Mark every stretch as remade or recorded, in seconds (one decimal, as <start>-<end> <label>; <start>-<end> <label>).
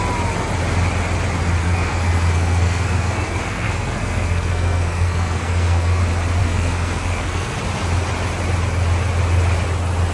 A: 0.0-1.6 recorded; 1.6-6.0 remade; 6.0-6.4 recorded; 6.4-7.6 remade; 7.6-10.1 recorded